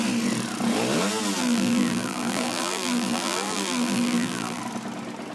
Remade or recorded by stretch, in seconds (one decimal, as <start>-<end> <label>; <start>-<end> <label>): 0.0-1.4 recorded; 1.4-4.6 remade; 4.6-5.3 recorded